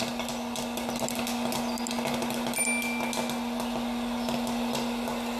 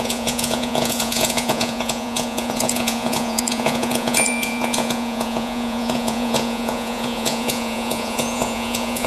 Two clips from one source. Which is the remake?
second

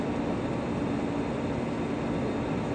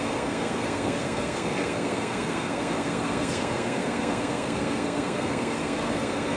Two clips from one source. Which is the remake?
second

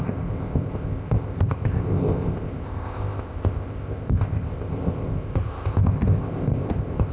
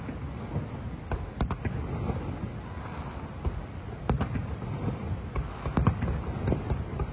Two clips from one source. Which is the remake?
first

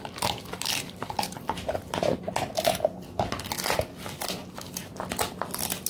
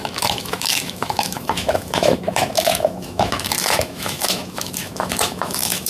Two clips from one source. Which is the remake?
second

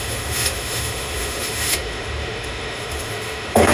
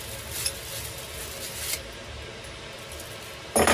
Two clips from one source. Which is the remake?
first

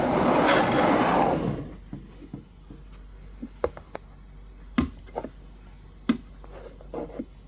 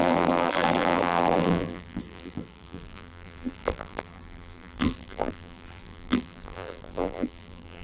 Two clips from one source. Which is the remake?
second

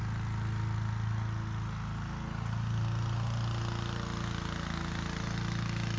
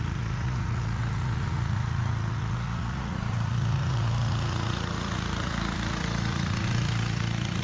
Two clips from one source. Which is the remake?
second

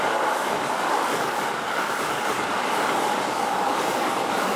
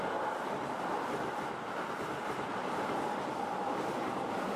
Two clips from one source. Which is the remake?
first